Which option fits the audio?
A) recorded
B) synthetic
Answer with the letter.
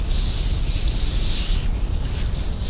A